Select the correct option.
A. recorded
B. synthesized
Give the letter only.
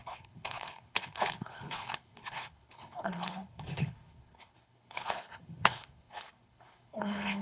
B